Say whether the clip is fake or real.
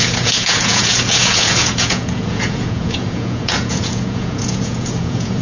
fake